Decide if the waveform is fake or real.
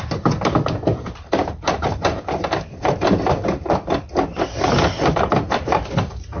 fake